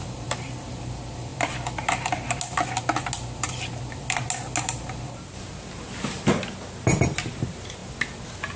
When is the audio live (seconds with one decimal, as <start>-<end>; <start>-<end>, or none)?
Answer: 0.8-8.6